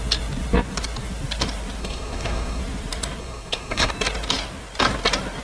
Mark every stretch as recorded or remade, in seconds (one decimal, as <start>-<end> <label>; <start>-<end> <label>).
0.0-1.8 recorded; 1.8-2.6 remade; 2.6-3.2 recorded; 3.2-3.9 remade; 3.9-5.4 recorded